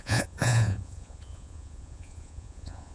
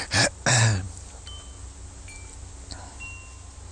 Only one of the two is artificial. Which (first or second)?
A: first